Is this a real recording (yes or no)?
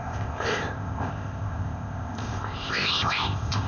no